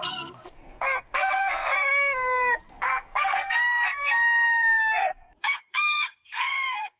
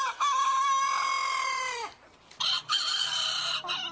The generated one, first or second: first